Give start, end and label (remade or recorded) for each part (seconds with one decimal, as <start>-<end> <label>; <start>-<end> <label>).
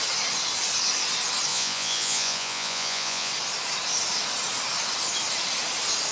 0.0-1.5 recorded; 1.5-3.3 remade; 3.3-6.1 recorded